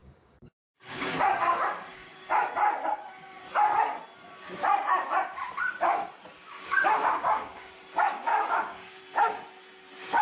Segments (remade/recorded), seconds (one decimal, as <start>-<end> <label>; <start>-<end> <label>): 0.0-2.3 remade; 2.3-6.4 recorded; 6.4-7.7 remade; 7.7-8.3 recorded; 8.3-9.0 remade; 9.0-10.2 recorded